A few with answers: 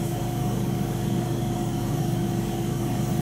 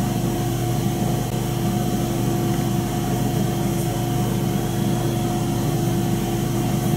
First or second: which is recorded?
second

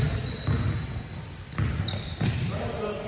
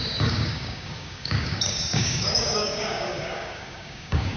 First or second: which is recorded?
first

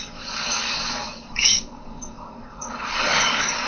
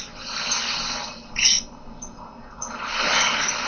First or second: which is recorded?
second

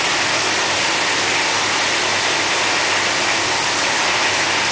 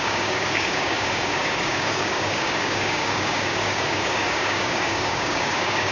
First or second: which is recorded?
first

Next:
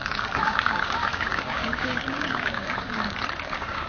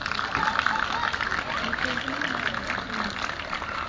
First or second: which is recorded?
second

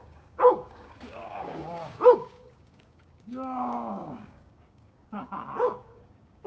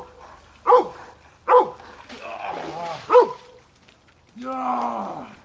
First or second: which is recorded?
second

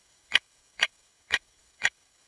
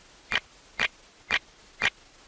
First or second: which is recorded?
second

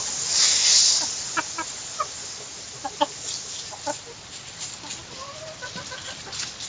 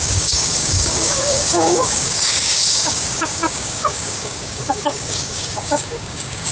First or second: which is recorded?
first